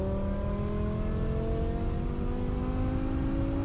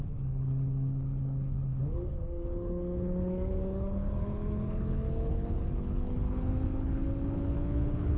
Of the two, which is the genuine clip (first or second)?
first